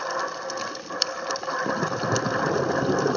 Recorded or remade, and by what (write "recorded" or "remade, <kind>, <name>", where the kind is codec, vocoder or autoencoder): recorded